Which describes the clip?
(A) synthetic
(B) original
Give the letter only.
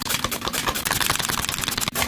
B